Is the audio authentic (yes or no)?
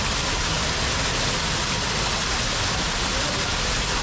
yes